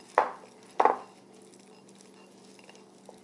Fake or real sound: real